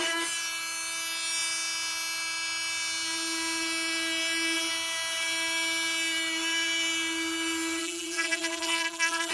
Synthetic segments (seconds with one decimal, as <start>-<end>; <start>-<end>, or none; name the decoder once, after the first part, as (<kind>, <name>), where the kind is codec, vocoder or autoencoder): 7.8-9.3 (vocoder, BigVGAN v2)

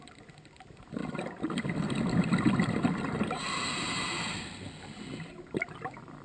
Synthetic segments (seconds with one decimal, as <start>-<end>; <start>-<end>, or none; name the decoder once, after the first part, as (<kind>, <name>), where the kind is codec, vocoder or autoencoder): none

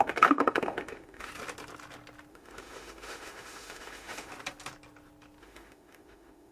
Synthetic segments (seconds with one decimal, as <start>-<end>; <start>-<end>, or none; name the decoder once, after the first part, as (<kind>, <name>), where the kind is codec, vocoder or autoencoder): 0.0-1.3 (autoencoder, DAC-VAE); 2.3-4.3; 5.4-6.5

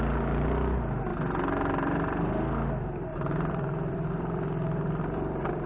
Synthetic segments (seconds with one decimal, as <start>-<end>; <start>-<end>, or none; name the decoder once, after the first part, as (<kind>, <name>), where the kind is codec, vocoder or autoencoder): 3.1-5.0 (vocoder, BigVGAN v2)

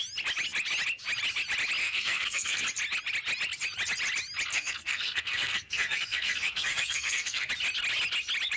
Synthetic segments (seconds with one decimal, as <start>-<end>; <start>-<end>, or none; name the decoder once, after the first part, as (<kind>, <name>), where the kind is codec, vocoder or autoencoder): 1.8-2.6 (codec, SNAC); 4.5-7.5

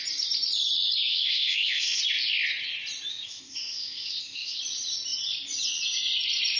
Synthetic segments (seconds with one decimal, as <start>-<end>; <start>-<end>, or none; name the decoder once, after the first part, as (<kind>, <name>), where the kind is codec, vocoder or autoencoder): 1.1-2.0 (codec, ZipCodec); 3.1-4.6

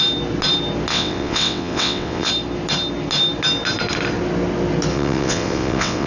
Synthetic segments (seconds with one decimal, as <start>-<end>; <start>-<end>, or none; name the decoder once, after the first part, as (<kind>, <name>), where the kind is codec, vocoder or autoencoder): 0.9-2.3 (vocoder, WaveNeXt); 4.9-6.1

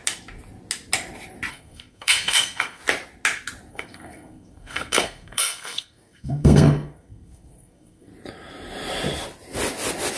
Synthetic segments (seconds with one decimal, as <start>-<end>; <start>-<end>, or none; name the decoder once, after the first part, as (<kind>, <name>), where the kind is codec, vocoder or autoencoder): 1.5-2.8 (codec, SNAC); 3.7-8.1